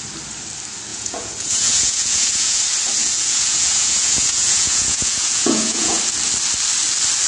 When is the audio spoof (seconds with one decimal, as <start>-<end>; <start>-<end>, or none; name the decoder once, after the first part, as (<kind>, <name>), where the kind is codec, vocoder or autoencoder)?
0.9-2.6 (vocoder, Vocos); 3.0-6.0